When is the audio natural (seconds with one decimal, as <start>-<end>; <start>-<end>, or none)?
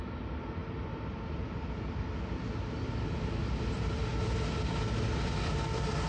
0.0-6.1